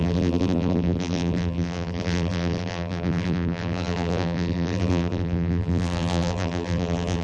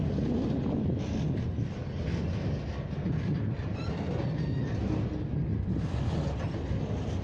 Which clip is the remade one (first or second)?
first